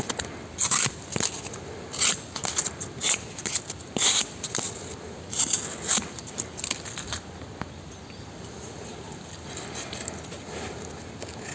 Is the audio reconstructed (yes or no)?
no